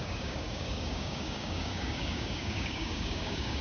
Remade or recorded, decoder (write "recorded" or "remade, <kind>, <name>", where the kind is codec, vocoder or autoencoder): remade, codec, DAC